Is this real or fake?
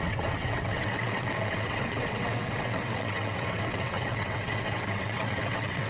fake